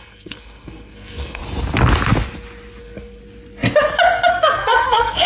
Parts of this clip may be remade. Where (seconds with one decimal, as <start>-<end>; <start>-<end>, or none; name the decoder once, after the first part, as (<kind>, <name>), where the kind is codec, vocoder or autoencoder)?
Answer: 0.0-1.4 (codec, SNAC); 2.8-3.2; 4.3-5.3

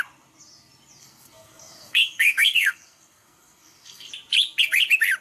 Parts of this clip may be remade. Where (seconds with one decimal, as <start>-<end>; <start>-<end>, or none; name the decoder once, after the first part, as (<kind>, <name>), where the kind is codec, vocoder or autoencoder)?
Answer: 1.0-4.1 (codec, SNAC)